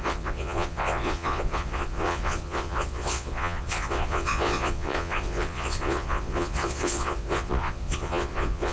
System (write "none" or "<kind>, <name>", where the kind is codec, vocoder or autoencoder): vocoder, Vocos